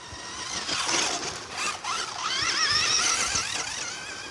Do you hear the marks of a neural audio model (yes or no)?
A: no